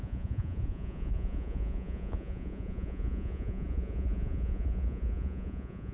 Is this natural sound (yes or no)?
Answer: no